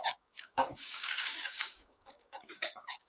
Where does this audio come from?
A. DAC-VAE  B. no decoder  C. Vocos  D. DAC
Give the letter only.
D